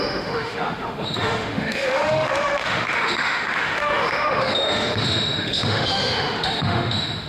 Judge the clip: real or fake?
fake